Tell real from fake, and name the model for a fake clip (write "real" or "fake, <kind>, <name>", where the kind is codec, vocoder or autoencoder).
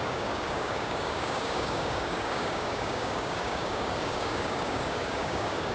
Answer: fake, codec, DAC